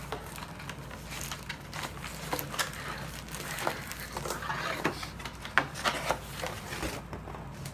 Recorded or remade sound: recorded